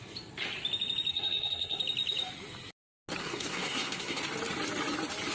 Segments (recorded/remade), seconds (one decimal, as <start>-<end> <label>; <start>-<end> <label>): 0.0-1.1 recorded; 1.1-1.8 remade; 1.8-3.2 recorded; 3.2-4.2 remade; 4.2-5.3 recorded

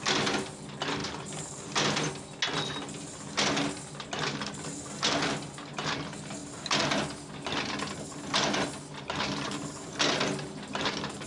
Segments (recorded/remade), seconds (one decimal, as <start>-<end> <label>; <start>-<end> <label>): 0.0-11.3 recorded

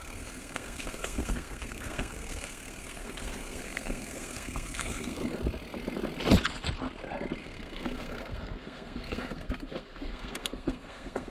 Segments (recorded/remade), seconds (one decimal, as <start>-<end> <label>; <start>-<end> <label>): 0.0-5.2 remade; 5.2-7.4 recorded; 7.4-11.3 remade

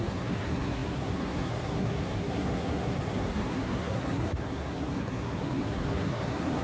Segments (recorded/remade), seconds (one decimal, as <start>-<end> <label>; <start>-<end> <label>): 0.0-6.6 remade

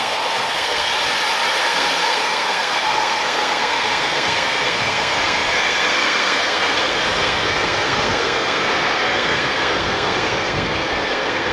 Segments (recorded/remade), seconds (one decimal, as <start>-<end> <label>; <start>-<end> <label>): 0.0-0.9 remade; 0.9-1.6 recorded; 1.6-11.5 remade

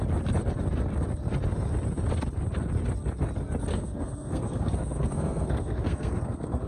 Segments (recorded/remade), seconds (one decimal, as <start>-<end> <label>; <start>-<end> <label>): 0.0-3.7 recorded; 3.7-6.7 remade

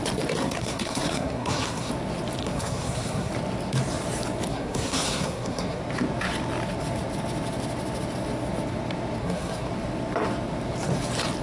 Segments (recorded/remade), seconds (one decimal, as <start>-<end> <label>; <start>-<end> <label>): 0.0-0.4 recorded; 0.4-1.9 remade; 1.9-2.4 recorded; 2.4-3.3 remade; 3.3-4.5 recorded; 4.5-5.8 remade; 5.8-9.2 recorded; 9.2-9.7 remade; 9.7-11.4 recorded

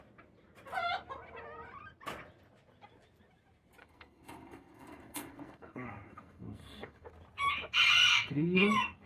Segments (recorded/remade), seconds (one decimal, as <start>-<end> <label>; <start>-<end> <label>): 0.0-3.8 recorded; 3.8-7.1 remade; 7.1-8.1 recorded; 8.1-9.1 remade